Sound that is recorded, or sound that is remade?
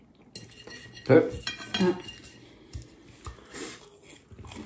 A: recorded